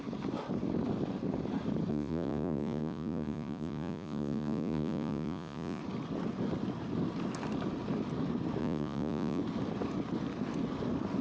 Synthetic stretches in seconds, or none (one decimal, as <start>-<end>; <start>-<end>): 1.9-5.8; 8.6-9.4